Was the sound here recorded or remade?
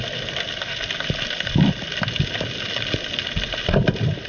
recorded